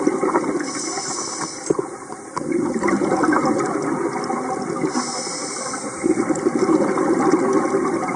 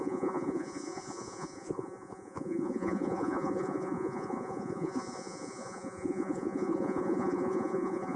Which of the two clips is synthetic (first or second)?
second